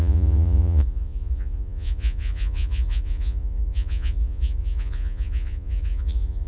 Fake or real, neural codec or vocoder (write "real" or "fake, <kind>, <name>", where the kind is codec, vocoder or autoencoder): fake, vocoder, Vocos